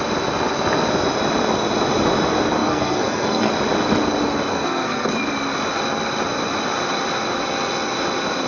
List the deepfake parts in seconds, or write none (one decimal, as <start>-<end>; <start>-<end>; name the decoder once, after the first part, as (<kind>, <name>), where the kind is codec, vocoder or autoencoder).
2.6-3.5 (codec, SNAC); 4.5-5.1